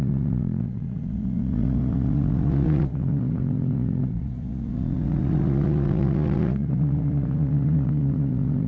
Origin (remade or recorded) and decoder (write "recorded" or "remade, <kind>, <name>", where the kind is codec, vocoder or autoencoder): remade, vocoder, Vocos